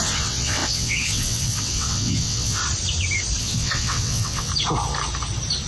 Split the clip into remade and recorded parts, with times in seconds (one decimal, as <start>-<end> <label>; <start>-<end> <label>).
0.0-2.6 remade; 2.6-3.4 recorded; 3.4-4.5 remade; 4.5-5.7 recorded

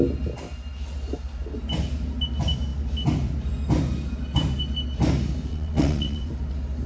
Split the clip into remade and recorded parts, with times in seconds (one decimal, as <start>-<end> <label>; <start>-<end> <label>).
0.0-5.5 recorded; 5.5-6.3 remade; 6.3-6.9 recorded